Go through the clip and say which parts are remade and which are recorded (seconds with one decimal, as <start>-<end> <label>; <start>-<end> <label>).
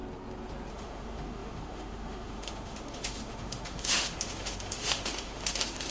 0.0-0.7 recorded; 0.7-5.9 remade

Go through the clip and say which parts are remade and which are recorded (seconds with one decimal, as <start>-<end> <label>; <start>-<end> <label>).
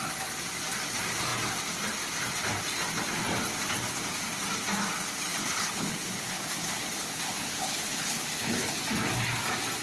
0.0-5.3 recorded; 5.3-8.8 remade; 8.8-9.8 recorded